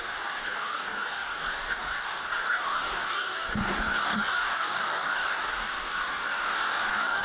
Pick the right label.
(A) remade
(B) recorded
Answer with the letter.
A